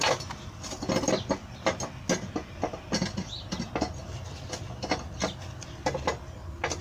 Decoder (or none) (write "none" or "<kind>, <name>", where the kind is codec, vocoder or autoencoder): none